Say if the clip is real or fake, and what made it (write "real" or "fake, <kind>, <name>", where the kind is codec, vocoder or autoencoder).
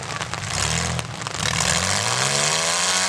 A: real